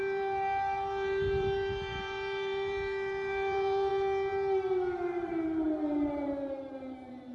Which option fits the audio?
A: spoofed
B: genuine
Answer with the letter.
A